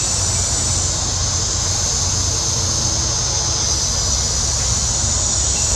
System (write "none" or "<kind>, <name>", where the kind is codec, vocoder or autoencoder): none